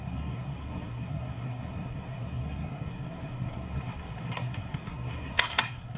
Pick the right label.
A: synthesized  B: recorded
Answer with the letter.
A